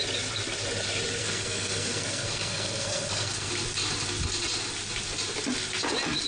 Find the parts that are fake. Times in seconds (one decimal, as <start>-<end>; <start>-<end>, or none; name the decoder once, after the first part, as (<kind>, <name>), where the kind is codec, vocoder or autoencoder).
1.2-3.5 (codec, SNAC)